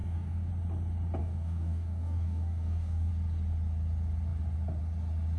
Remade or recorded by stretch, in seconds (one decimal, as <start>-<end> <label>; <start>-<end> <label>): 0.0-0.5 remade; 0.5-1.2 recorded; 1.2-3.1 remade; 3.1-5.4 recorded